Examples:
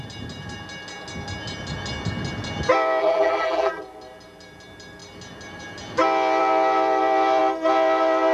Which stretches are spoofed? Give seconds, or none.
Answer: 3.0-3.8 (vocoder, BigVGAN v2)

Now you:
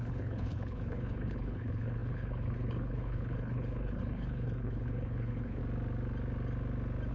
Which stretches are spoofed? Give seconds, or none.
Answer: 0.0-5.6 (codec, HILCodec)

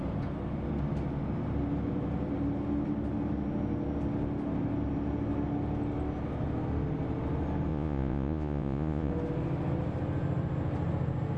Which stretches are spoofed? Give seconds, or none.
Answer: 7.7-9.1 (vocoder, Vocos)

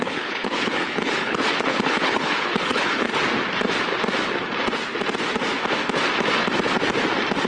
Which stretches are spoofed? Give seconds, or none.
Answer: 0.0-3.1 (codec, HILCodec)